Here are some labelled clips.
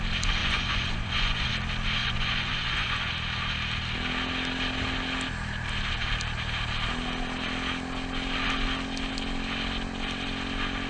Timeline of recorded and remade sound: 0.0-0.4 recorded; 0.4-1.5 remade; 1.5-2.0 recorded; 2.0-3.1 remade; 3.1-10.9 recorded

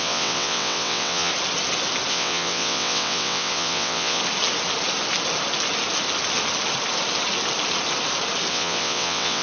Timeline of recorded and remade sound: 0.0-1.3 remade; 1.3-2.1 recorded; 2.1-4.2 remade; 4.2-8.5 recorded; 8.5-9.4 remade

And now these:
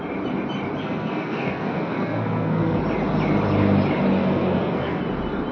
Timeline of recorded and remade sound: 0.0-0.8 recorded; 0.8-2.8 remade; 2.8-4.2 recorded; 4.2-5.0 remade; 5.0-5.5 recorded

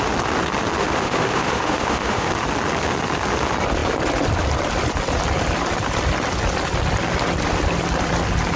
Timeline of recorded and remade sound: 0.0-0.8 recorded; 0.8-2.3 remade; 2.3-8.6 recorded

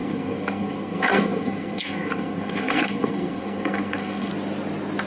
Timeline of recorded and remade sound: 0.0-4.3 remade; 4.3-5.1 recorded

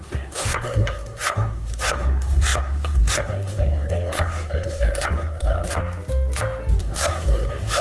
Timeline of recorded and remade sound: 0.0-5.8 remade; 5.8-6.8 recorded; 6.8-7.8 remade